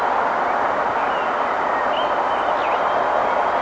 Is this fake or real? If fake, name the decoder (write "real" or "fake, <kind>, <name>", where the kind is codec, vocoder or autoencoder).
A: real